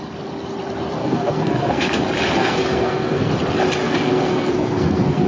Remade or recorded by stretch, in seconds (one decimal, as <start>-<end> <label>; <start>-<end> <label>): 0.0-1.0 recorded; 1.0-2.0 remade; 2.0-2.4 recorded; 2.4-3.3 remade; 3.3-3.8 recorded; 3.8-5.3 remade